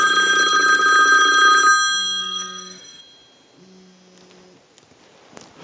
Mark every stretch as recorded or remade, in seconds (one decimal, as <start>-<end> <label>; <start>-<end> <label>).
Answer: 0.0-2.2 recorded; 2.2-3.0 remade; 3.0-5.6 recorded